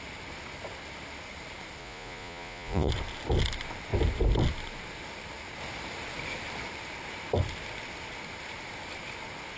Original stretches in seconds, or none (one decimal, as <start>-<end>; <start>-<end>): 0.0-1.8; 2.9-9.6